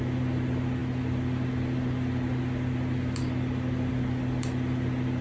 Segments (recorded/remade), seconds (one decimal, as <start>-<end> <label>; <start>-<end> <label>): 0.0-5.2 recorded